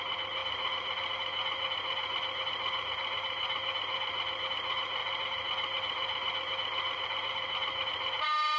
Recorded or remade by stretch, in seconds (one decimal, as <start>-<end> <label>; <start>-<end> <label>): 0.0-8.6 recorded